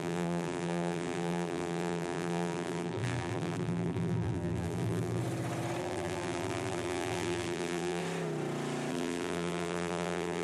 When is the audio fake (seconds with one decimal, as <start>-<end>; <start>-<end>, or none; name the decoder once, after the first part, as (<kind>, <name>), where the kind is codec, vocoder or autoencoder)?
0.0-5.2 (vocoder, BigVGAN v2); 5.8-8.0; 8.9-10.4